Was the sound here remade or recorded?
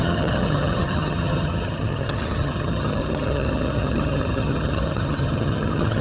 remade